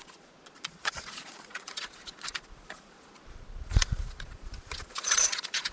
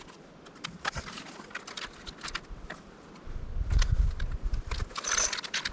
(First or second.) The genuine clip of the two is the second